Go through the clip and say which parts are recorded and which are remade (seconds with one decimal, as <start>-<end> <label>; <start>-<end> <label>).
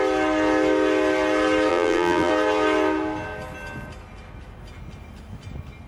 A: 0.0-1.7 recorded; 1.7-2.3 remade; 2.3-5.9 recorded